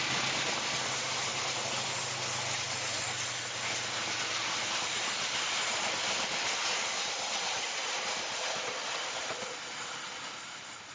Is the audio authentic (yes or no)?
yes